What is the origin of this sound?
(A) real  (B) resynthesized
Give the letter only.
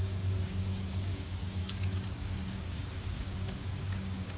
B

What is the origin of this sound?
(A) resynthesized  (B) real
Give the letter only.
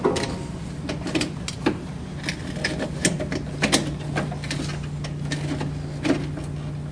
B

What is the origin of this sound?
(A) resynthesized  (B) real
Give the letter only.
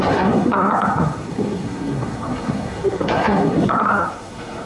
A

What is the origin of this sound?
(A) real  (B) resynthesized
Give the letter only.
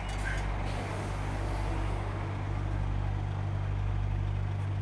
A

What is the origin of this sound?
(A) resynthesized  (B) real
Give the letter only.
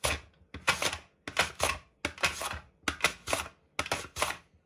B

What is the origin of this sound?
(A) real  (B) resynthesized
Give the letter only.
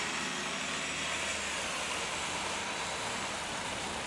A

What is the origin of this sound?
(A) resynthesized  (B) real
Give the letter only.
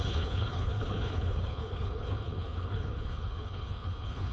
A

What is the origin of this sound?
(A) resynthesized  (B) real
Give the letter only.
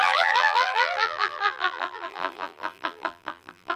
A